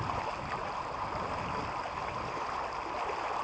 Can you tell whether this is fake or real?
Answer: real